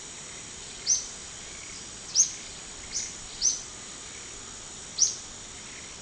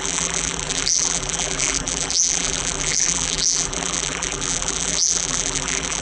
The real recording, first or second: first